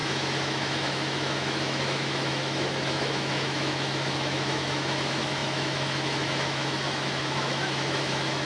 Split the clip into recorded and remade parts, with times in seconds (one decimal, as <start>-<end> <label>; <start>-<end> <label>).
0.0-8.5 remade

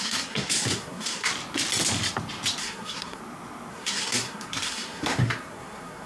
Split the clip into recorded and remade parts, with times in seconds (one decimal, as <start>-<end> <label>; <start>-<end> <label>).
0.0-1.3 remade; 1.3-2.6 recorded; 2.6-3.2 remade; 3.2-3.7 recorded; 3.7-6.1 remade

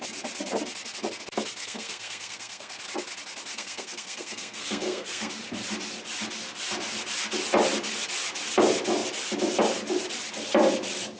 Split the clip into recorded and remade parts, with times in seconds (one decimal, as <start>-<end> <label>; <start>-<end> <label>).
0.0-1.6 recorded; 1.6-2.8 remade; 2.8-3.5 recorded; 3.5-5.3 remade; 5.3-11.2 recorded

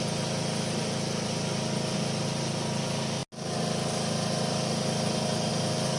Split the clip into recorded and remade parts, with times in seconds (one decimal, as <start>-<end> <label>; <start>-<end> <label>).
0.0-6.0 recorded

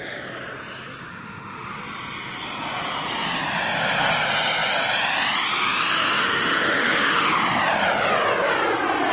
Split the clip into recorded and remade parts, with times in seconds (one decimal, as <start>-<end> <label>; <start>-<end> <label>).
0.0-1.1 recorded; 1.1-1.8 remade; 1.8-5.6 recorded; 5.6-7.3 remade; 7.3-9.1 recorded

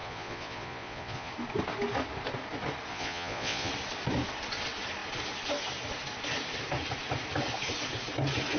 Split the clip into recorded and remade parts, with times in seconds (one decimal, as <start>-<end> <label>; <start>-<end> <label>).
0.0-1.3 remade; 1.3-2.9 recorded; 2.9-3.7 remade; 3.7-8.6 recorded

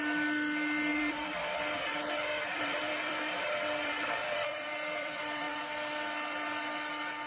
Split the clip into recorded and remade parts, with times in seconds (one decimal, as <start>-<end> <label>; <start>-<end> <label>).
0.0-0.9 recorded; 0.9-1.6 remade; 1.6-2.5 recorded; 2.5-5.6 remade; 5.6-7.3 recorded